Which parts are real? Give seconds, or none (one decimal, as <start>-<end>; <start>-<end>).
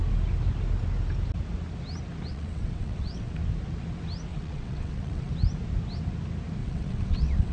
0.0-2.3; 3.3-4.3; 5.3-6.6